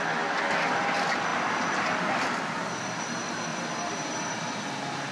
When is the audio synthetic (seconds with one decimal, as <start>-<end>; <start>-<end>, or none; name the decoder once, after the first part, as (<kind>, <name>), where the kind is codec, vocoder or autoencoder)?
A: 1.3-2.7 (vocoder, BigVGAN v2); 3.5-4.4